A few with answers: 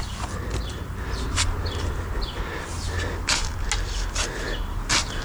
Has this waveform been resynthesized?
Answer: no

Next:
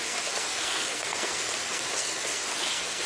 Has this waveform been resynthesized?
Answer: yes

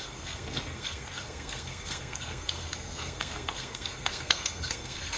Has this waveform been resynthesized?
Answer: yes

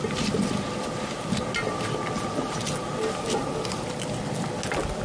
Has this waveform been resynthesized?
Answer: no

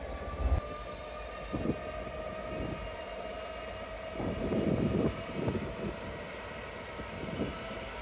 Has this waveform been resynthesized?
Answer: no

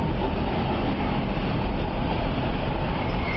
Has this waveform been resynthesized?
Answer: yes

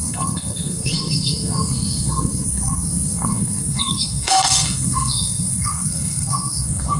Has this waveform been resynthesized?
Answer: yes